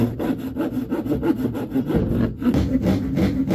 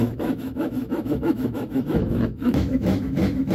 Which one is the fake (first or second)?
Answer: second